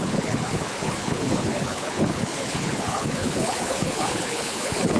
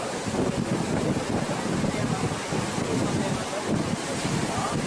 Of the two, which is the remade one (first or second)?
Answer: first